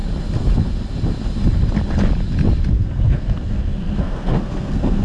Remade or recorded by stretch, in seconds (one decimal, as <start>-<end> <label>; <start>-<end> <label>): 0.0-2.7 recorded; 2.7-5.0 remade